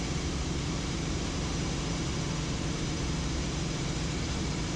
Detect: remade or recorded remade